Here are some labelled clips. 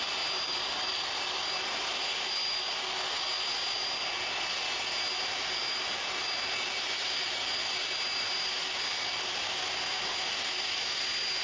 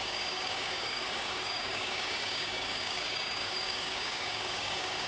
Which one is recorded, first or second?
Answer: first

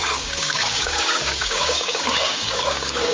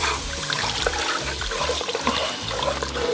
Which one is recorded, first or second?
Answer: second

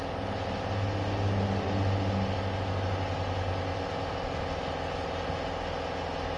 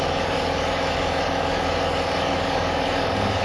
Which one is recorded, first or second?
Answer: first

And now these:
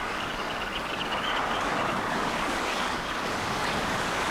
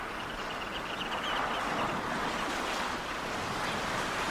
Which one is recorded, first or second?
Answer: second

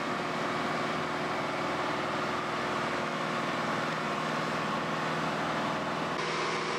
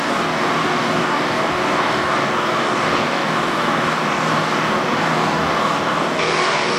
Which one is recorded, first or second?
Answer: first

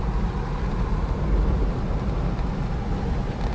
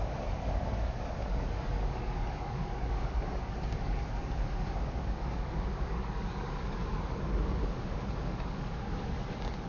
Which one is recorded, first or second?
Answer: first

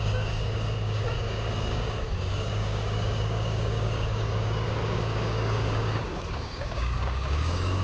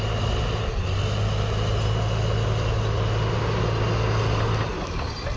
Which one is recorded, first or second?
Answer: second